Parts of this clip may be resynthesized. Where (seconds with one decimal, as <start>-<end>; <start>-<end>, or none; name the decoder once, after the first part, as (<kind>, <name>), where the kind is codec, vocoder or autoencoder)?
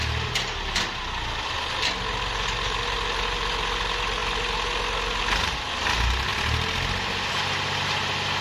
none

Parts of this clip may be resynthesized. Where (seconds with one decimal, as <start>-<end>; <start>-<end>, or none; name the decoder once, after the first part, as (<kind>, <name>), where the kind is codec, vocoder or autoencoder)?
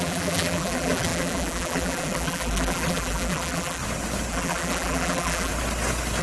0.0-3.8 (vocoder, BigVGAN v2); 4.3-5.5